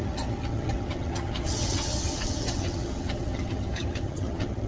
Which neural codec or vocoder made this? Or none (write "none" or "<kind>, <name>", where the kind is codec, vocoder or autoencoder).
vocoder, HiFi-GAN